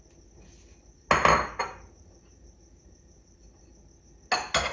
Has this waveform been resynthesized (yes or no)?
no